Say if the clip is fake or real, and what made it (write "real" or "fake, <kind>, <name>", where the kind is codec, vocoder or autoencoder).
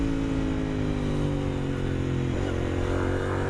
real